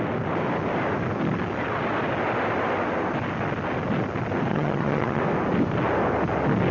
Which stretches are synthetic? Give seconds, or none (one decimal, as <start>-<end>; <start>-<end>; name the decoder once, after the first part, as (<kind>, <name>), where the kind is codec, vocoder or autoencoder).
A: 4.5-5.2 (vocoder, HiFi-GAN)